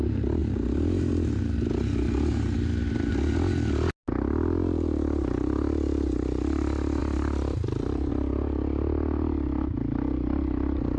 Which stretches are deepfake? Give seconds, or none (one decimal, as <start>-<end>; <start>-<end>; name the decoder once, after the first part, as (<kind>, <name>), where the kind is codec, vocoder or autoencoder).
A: 7.0-8.1 (vocoder, BigVGAN v2)